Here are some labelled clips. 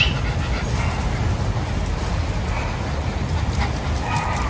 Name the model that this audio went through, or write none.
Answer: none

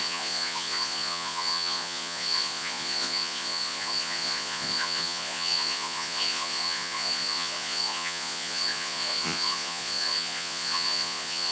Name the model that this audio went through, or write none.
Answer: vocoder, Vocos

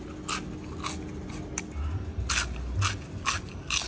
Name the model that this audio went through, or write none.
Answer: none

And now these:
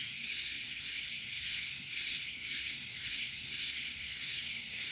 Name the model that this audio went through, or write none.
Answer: codec, SNAC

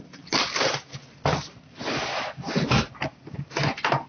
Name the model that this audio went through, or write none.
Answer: none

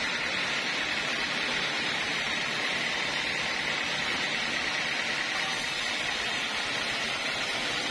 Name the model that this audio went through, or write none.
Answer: none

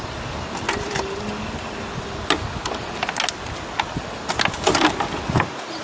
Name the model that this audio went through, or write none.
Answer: none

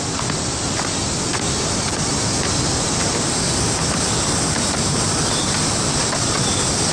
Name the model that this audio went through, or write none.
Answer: none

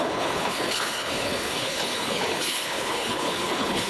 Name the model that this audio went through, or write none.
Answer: codec, HILCodec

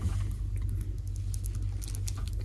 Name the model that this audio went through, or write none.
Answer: none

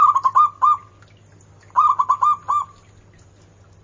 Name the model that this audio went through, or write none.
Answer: none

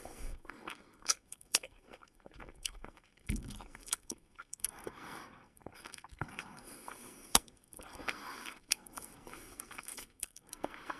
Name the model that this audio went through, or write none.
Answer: codec, SNAC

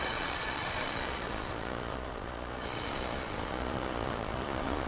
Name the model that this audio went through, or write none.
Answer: vocoder, Vocos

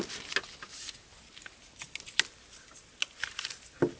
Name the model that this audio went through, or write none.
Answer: none